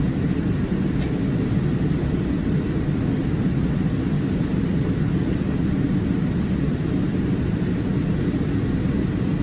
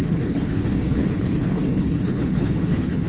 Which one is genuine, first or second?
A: first